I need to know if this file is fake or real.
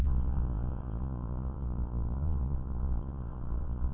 fake